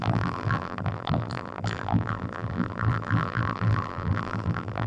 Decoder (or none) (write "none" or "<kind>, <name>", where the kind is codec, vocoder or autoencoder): vocoder, BigVGAN v2